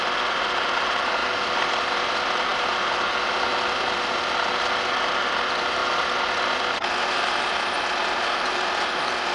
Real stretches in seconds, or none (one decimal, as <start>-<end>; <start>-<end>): 0.0-9.3